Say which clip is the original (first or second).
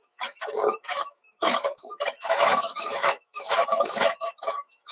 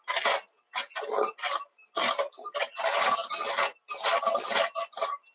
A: second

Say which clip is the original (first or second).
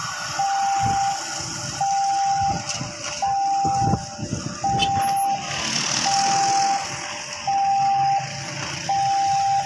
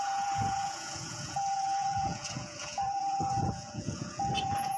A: first